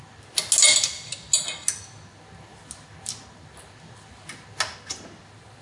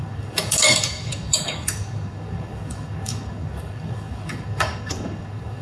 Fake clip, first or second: second